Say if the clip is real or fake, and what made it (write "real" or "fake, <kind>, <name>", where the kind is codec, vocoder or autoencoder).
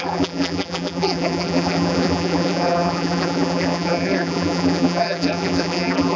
fake, vocoder, BigVGAN v2